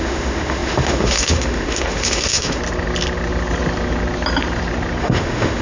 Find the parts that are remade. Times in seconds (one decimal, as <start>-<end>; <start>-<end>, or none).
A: 0.0-2.6; 5.0-5.6